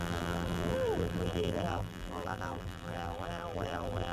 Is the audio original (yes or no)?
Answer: no